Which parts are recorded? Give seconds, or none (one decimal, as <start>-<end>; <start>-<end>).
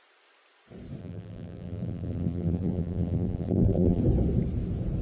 0.0-1.0; 4.0-5.0